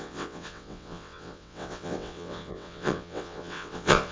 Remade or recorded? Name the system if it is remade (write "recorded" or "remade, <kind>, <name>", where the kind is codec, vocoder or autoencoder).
remade, vocoder, WaveNeXt